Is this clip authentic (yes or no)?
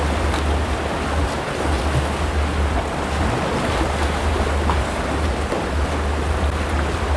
yes